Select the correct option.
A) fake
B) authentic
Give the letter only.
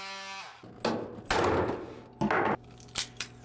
B